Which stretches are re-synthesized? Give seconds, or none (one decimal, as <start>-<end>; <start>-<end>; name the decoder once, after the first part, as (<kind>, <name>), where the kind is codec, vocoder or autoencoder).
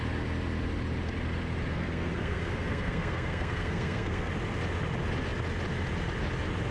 1.7-4.3 (codec, SNAC)